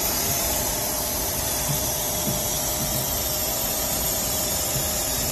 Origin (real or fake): fake